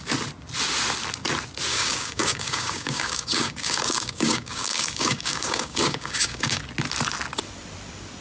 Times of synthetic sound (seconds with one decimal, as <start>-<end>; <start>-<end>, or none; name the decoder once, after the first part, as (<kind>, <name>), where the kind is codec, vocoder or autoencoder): 1.7-6.6 (codec, DAC)